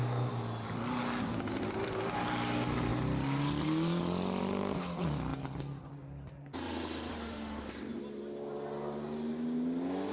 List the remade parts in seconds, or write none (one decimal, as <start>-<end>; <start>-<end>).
7.1-7.7